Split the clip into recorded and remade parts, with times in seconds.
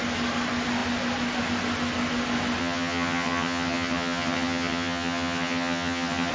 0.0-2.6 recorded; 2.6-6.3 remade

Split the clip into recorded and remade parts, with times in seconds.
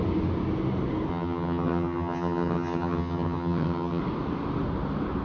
0.0-1.1 recorded; 1.1-4.0 remade; 4.0-5.2 recorded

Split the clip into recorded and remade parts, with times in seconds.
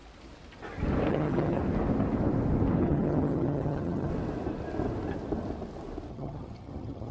0.0-1.1 recorded; 1.1-1.6 remade; 1.6-2.8 recorded; 2.8-4.1 remade; 4.1-6.1 recorded; 6.1-7.1 remade